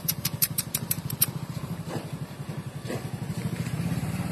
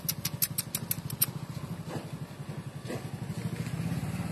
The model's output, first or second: first